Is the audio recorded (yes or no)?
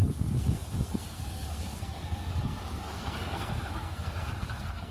no